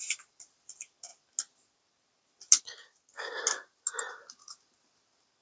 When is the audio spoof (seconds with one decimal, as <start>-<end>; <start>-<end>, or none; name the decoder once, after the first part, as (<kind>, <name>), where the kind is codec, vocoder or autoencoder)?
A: none